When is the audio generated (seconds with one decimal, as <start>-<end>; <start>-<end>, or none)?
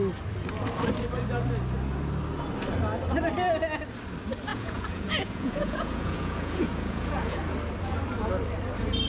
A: 4.5-7.4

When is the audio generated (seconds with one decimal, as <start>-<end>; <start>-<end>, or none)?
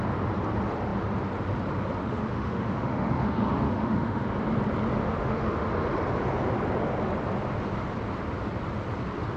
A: 2.0-4.3; 5.0-5.7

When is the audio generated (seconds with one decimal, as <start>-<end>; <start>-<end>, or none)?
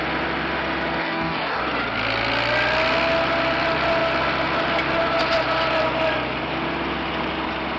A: 1.0-1.6